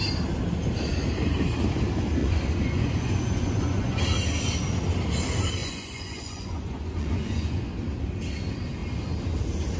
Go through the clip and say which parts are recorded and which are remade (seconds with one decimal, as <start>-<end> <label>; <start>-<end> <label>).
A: 0.0-2.2 recorded; 2.2-4.0 remade; 4.0-5.6 recorded; 5.6-7.7 remade; 7.7-9.8 recorded